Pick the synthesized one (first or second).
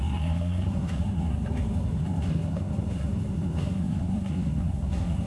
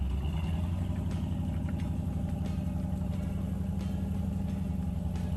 first